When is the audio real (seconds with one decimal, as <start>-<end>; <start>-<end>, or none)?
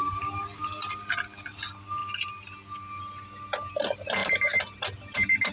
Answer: 0.0-5.5